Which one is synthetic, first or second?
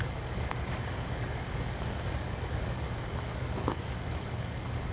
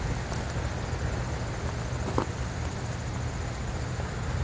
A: first